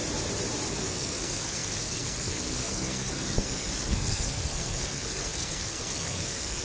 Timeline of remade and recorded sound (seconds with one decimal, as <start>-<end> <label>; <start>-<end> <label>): 0.0-0.7 recorded; 0.7-6.6 remade